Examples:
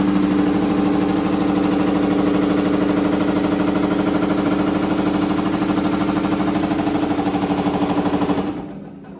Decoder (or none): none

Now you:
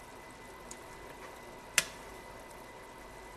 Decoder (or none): none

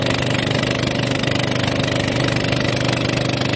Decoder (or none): none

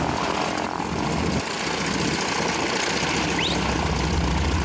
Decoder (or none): none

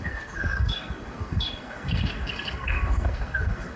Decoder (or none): codec, SNAC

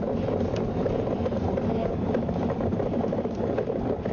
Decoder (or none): none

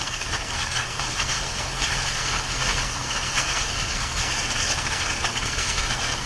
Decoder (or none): codec, SNAC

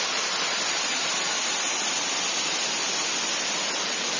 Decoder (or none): none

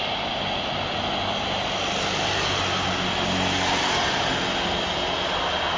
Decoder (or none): none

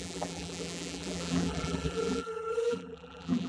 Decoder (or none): vocoder, BigVGAN v2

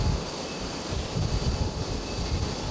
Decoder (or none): none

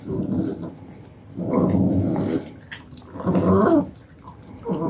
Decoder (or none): none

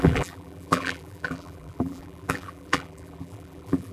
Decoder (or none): vocoder, BigVGAN v2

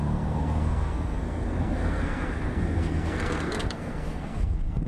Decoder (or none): codec, SNAC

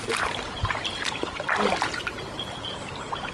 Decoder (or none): none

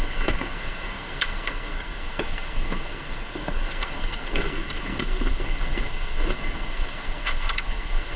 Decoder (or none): codec, SNAC